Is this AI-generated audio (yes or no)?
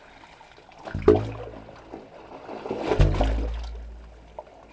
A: no